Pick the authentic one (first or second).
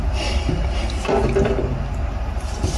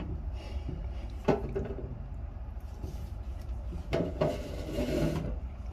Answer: first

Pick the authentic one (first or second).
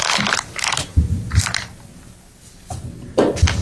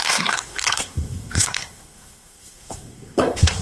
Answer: first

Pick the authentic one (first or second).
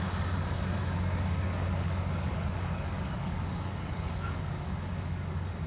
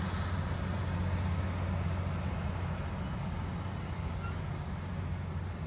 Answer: second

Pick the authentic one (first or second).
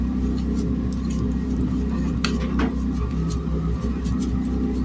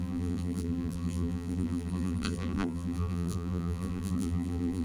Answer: first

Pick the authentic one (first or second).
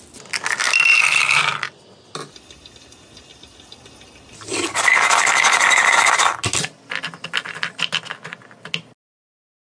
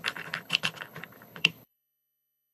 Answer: first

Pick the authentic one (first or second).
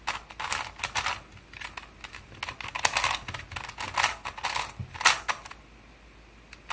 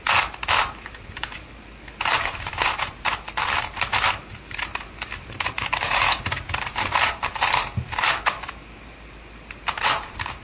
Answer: first